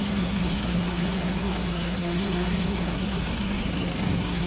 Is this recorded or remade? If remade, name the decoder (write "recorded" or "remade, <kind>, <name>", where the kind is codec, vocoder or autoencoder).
remade, codec, SNAC